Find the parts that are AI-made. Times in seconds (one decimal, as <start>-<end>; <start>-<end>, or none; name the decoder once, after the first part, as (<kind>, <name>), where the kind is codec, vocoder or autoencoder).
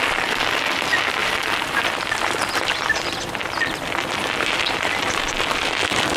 1.2-4.9 (vocoder, BigVGAN v2)